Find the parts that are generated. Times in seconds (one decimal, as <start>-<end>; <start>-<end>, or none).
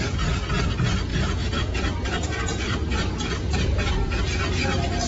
1.1-4.2